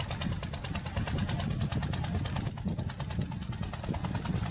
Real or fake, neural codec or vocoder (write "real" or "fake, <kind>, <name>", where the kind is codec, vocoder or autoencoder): real